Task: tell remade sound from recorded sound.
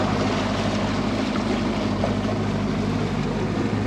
recorded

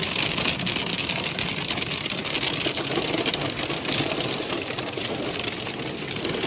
recorded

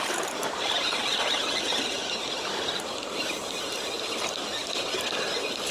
remade